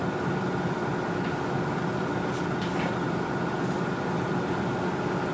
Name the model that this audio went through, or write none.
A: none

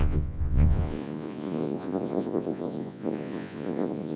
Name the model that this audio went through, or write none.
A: vocoder, Vocos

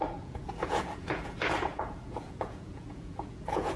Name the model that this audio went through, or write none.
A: vocoder, Vocos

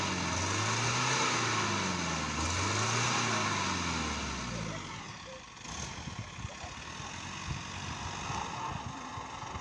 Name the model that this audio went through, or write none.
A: none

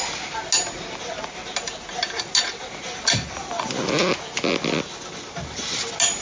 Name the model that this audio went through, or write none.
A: none